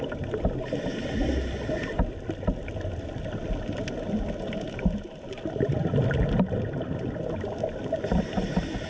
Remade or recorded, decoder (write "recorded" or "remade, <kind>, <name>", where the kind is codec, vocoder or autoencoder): recorded